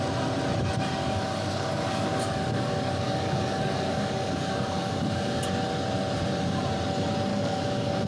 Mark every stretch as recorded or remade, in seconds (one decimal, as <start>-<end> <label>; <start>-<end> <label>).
0.0-1.0 recorded; 1.0-5.4 remade; 5.4-7.3 recorded; 7.3-8.1 remade